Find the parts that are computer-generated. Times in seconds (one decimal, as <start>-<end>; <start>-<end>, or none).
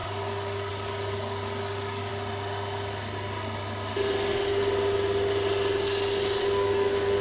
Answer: 0.0-2.1; 6.4-7.2